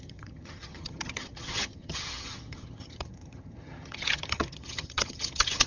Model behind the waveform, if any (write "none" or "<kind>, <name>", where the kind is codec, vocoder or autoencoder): vocoder, HiFi-GAN